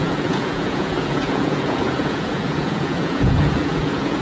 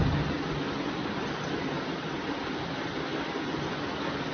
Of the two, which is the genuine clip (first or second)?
second